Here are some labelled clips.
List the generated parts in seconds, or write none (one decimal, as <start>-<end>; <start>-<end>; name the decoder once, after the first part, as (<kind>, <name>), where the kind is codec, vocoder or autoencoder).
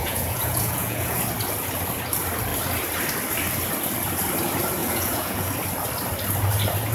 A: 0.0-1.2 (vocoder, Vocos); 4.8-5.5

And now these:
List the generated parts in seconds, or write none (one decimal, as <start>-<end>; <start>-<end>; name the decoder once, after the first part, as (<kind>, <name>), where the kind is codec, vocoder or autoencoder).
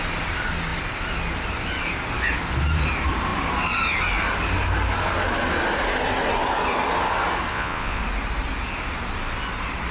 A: 7.5-8.0 (vocoder, Vocos)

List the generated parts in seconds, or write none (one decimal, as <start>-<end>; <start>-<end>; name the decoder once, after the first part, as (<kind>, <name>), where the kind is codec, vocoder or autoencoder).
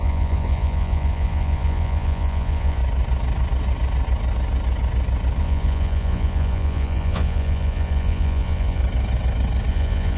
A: 0.0-2.8 (vocoder, Vocos); 5.4-8.8; 9.7-10.2